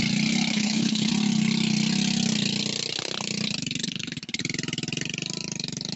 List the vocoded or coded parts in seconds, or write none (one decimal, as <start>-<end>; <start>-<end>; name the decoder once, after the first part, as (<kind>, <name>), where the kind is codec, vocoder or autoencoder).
0.5-1.1 (codec, HILCodec); 3.8-4.4